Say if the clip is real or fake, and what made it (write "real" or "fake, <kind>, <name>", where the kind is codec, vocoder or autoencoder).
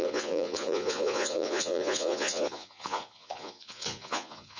fake, vocoder, Vocos